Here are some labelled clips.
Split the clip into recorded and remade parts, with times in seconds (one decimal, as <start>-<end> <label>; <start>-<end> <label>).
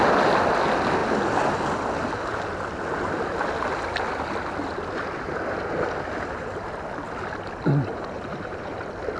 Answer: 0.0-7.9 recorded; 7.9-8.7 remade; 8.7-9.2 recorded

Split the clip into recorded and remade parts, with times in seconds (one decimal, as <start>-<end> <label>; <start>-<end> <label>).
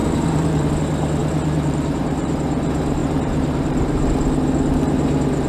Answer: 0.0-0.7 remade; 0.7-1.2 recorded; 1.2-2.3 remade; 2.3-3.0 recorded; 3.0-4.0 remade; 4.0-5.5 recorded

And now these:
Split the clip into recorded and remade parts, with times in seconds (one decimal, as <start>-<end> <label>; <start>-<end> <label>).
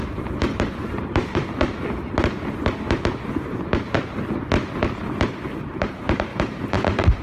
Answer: 0.0-1.4 remade; 1.4-5.6 recorded; 5.6-7.2 remade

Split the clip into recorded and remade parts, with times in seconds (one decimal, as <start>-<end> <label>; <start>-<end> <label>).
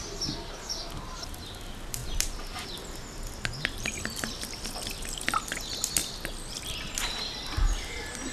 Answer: 0.0-8.3 recorded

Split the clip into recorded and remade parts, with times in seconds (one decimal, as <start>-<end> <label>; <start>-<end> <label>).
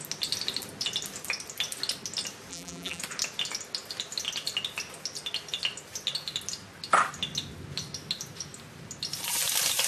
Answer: 0.0-2.5 recorded; 2.5-3.0 remade; 3.0-9.9 recorded